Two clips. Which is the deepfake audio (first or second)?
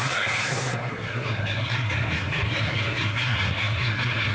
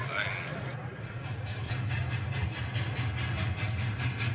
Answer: first